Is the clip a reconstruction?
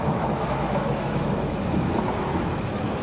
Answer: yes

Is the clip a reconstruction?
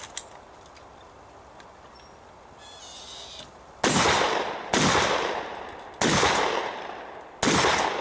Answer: no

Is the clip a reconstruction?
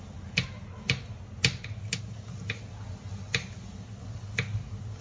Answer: no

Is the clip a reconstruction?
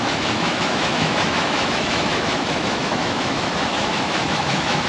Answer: yes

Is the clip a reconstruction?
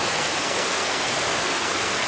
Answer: yes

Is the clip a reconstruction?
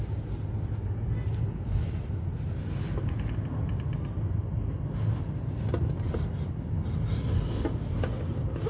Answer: no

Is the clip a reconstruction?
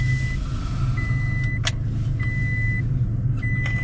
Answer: no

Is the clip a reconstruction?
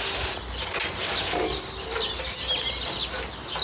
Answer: no